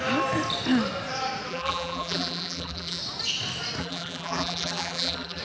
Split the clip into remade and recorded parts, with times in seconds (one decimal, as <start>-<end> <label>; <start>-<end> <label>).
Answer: 0.0-1.5 recorded; 1.5-3.0 remade; 3.0-3.8 recorded; 3.8-5.4 remade